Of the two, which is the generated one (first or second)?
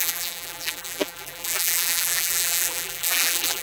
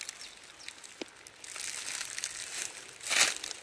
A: first